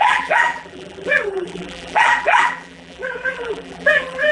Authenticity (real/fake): fake